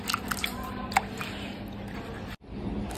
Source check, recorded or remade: recorded